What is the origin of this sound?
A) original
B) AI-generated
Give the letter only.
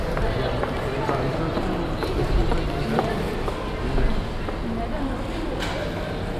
A